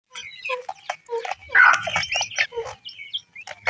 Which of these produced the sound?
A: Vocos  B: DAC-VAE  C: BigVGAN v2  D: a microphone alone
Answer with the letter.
D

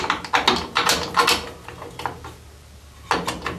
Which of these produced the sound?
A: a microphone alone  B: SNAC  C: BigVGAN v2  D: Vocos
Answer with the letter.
A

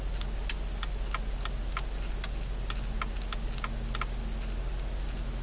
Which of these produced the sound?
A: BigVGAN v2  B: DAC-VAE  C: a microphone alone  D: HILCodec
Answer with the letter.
C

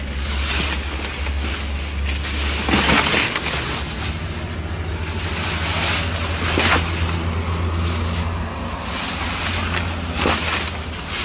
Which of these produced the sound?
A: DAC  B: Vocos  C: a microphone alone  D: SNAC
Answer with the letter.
C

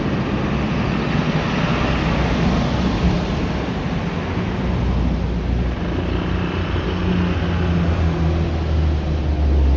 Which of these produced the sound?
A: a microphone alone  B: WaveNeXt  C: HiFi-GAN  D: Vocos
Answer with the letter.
A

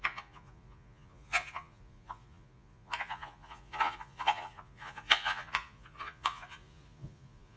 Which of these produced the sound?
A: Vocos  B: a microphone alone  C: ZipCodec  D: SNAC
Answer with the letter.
A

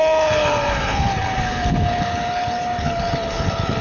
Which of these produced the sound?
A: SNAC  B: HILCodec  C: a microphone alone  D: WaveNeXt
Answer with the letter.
B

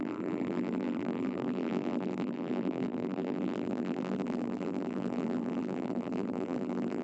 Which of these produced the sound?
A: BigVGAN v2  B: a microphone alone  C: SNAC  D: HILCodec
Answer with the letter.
A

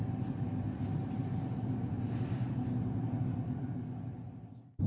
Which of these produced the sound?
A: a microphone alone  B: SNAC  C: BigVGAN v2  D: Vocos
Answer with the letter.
A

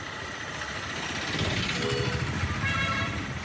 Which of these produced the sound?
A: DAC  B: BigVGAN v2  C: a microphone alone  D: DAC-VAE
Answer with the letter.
C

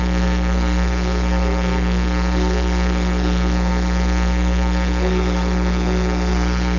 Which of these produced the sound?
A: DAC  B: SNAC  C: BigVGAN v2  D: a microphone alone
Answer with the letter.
B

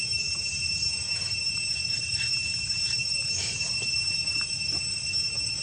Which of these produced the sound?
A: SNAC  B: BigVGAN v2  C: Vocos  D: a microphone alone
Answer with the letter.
B